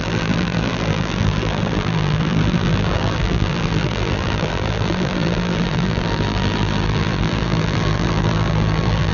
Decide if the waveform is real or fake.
fake